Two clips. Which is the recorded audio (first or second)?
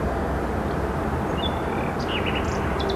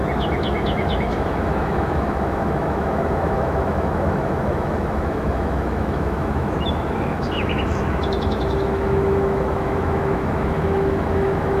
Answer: first